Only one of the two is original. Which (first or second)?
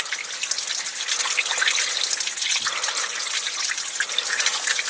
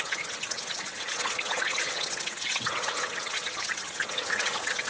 first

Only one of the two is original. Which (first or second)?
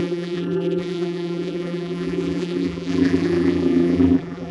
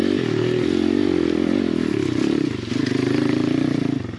second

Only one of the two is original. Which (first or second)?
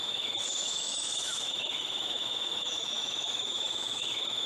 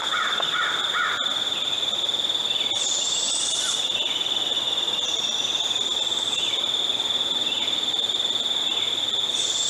second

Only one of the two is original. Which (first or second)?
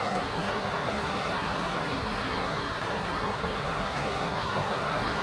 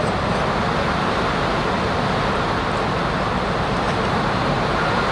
second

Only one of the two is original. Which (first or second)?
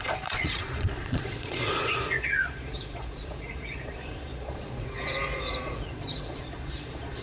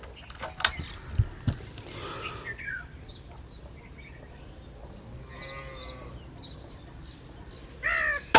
second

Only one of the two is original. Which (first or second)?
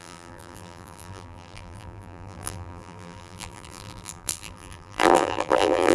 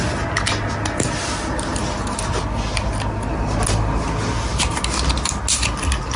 second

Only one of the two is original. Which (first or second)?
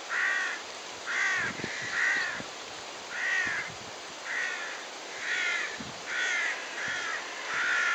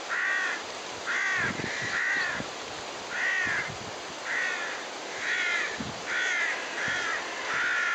second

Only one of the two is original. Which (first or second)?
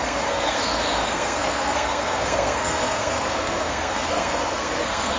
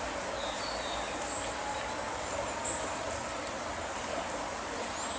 second